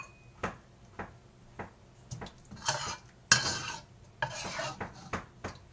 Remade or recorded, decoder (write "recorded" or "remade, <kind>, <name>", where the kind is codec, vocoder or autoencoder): recorded